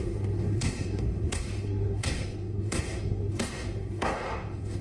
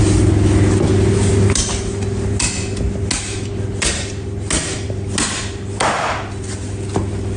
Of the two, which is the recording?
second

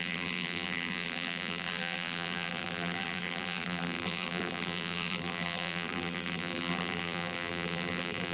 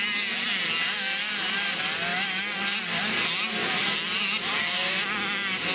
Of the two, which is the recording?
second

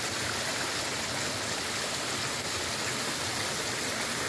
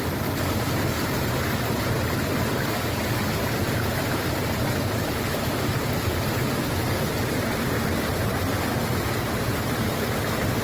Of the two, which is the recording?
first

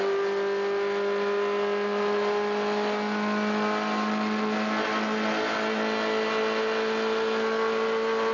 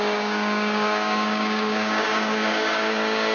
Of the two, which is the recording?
first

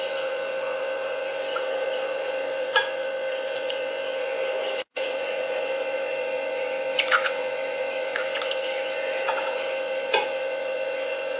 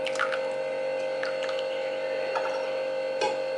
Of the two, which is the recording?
second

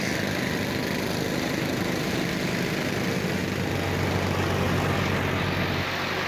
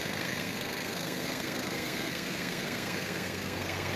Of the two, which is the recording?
first